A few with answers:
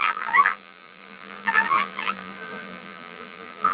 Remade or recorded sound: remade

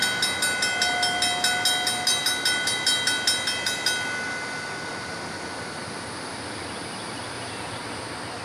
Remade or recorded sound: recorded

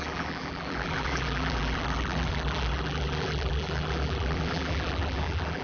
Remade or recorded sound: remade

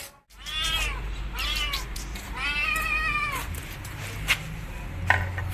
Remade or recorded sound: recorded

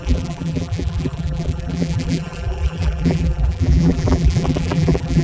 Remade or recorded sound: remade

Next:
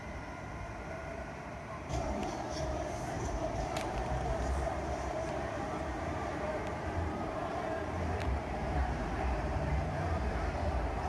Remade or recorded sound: remade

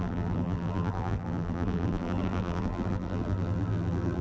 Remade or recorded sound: remade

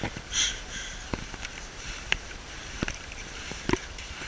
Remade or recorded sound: remade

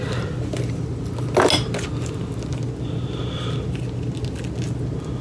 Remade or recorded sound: recorded